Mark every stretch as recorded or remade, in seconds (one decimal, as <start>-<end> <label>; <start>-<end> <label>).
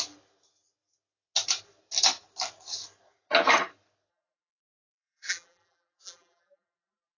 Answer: 0.0-4.1 recorded; 4.1-7.2 remade